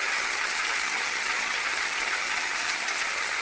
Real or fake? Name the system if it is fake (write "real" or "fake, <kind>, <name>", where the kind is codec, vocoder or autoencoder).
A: fake, vocoder, HiFi-GAN